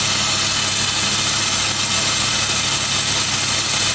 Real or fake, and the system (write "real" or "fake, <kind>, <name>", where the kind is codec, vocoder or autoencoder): real